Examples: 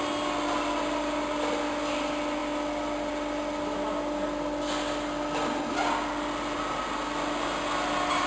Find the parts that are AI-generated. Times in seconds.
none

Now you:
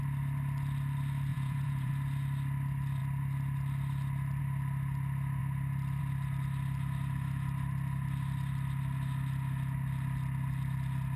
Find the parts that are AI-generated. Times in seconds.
1.3-1.9 (vocoder, Vocos)